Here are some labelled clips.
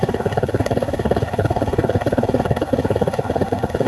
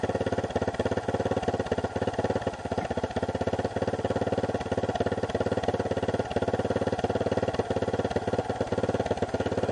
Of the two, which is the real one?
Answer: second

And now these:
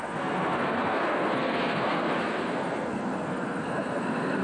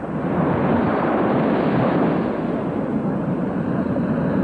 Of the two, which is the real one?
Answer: second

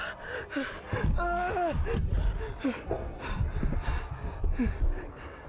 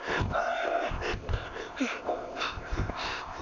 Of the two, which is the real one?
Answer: first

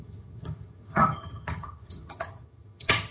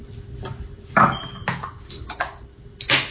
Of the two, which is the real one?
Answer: second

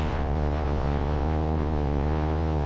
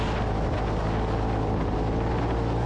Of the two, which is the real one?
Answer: second